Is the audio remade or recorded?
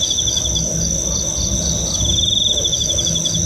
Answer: recorded